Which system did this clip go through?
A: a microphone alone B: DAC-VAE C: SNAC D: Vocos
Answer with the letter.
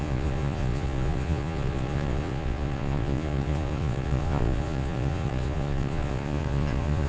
D